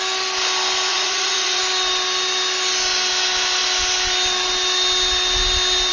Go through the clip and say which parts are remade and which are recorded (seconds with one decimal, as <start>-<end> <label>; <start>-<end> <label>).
0.0-0.9 recorded; 0.9-1.6 remade; 1.6-5.9 recorded